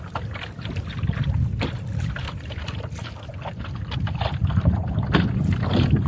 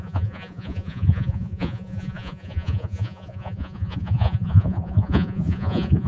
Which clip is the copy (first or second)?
second